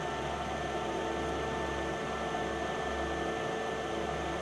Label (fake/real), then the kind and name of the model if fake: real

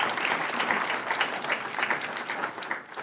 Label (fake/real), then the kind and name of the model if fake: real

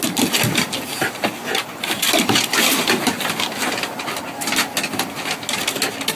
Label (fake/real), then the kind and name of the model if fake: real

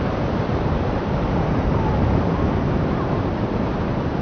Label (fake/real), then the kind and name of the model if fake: fake, vocoder, BigVGAN v2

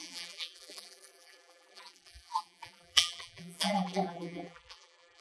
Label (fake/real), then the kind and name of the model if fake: fake, vocoder, BigVGAN v2